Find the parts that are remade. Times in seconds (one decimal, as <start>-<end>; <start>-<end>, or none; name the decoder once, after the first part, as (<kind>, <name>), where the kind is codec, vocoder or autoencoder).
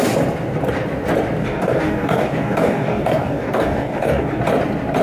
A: 1.4-4.4 (codec, DAC)